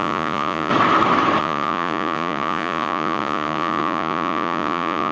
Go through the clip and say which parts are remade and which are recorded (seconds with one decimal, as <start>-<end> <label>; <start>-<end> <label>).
0.0-0.7 remade; 0.7-1.4 recorded; 1.4-5.1 remade